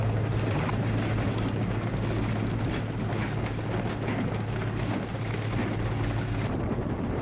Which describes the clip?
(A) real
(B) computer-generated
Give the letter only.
A